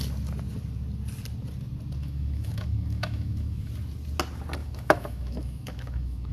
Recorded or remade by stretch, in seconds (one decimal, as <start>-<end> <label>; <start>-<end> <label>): 0.0-2.0 recorded; 2.0-3.7 remade; 3.7-4.6 recorded; 4.6-6.3 remade